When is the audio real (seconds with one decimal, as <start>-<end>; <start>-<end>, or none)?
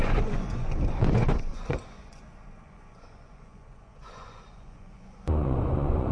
none